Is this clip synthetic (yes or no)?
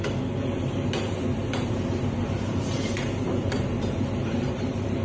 no